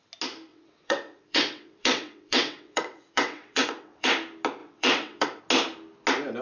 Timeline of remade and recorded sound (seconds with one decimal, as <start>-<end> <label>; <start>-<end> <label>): 0.0-0.5 recorded; 0.5-4.1 remade; 4.1-4.6 recorded; 4.6-5.4 remade; 5.4-6.4 recorded